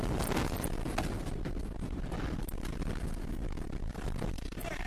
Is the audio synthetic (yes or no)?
no